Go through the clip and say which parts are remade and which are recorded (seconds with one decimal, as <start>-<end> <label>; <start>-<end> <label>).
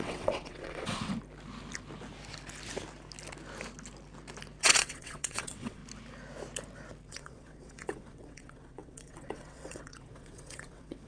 0.0-1.1 remade; 1.1-4.6 recorded; 4.6-5.8 remade; 5.8-7.1 recorded; 7.1-11.1 remade